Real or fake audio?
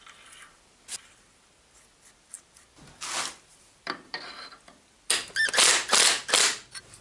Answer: fake